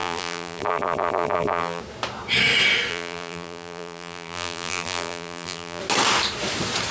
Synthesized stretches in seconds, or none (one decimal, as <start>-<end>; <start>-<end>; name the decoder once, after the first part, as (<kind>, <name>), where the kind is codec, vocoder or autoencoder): 0.0-1.8 (vocoder, BigVGAN v2); 2.9-5.8